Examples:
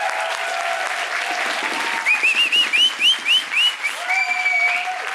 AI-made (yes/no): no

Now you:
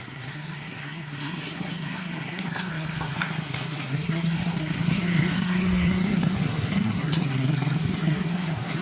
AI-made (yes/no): yes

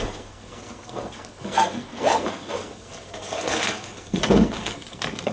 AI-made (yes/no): yes